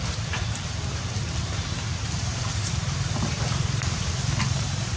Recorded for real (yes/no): no